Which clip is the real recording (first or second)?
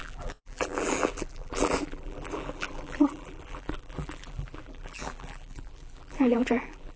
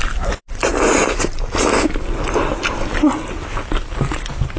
second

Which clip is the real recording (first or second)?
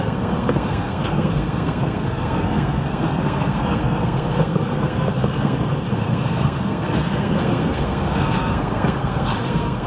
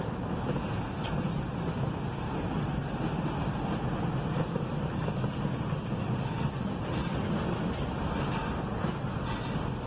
second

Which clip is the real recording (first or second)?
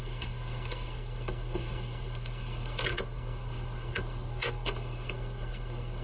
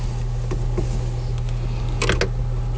second